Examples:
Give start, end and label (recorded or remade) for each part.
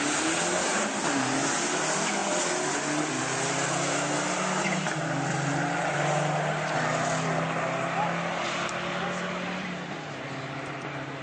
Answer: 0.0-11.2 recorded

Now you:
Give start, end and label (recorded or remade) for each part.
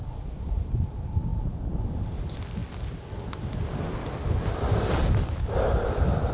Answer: 0.0-6.3 recorded